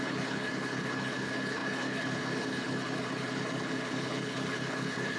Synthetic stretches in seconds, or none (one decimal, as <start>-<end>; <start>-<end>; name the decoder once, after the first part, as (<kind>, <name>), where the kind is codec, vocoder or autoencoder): 0.0-5.2 (codec, HILCodec)